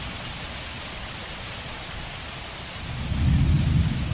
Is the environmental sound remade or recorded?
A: recorded